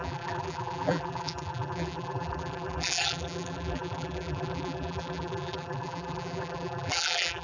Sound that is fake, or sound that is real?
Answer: fake